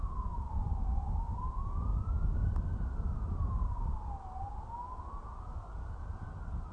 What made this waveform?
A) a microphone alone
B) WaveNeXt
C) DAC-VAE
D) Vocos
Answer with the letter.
A